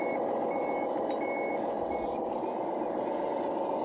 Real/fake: real